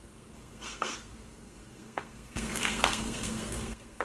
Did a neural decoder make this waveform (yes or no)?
yes